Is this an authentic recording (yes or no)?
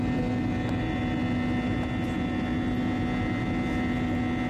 yes